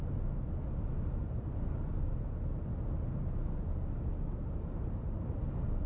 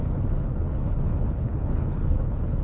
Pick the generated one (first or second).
second